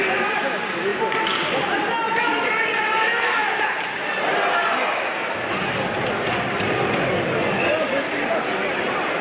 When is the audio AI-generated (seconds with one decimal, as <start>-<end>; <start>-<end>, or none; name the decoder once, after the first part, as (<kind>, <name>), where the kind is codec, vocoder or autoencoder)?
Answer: none

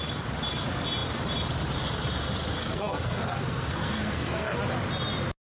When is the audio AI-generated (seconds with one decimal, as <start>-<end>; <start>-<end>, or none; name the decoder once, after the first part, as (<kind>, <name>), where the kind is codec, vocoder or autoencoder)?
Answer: 2.6-4.6 (codec, SNAC)

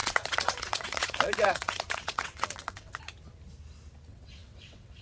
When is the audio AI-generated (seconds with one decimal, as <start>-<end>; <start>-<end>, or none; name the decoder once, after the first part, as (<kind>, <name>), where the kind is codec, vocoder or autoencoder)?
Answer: 0.0-3.0 (vocoder, WaveNeXt); 4.1-5.0

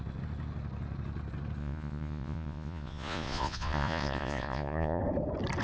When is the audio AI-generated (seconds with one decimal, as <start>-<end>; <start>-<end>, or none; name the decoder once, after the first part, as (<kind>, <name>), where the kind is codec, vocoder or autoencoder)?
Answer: 1.6-5.0 (vocoder, Vocos)

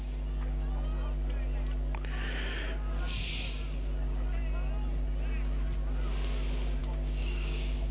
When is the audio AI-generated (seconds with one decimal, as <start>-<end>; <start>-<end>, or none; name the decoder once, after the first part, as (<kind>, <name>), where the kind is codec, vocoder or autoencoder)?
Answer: 6.8-7.9 (codec, DAC)

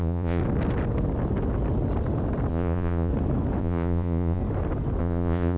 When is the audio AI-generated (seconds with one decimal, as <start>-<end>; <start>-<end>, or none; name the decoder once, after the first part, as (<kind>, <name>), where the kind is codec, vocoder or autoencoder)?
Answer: 0.0-0.4 (vocoder, Vocos); 2.5-3.1; 3.6-4.4; 5.0-5.6

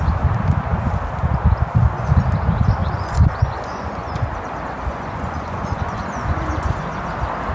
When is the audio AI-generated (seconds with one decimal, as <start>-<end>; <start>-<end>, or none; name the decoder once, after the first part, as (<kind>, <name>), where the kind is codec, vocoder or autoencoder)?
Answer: 1.8-2.3 (vocoder, Vocos); 2.8-4.3; 4.9-7.0